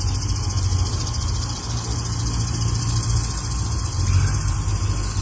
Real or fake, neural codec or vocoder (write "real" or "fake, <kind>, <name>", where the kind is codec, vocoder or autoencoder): real